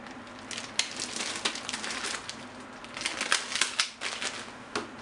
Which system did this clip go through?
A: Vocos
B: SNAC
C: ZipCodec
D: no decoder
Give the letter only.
D